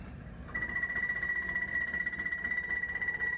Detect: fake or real fake